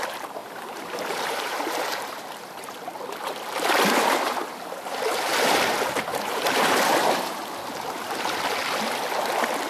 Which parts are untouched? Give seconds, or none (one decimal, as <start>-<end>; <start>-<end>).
0.0-0.4; 2.2-6.1; 6.9-9.7